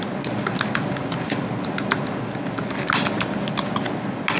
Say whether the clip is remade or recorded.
recorded